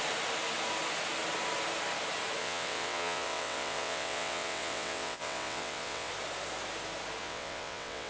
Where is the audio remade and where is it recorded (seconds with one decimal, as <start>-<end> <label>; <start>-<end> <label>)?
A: 0.0-2.4 recorded; 2.4-6.1 remade; 6.1-7.2 recorded; 7.2-8.1 remade